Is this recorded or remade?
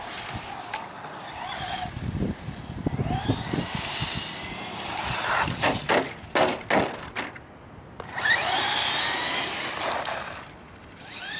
recorded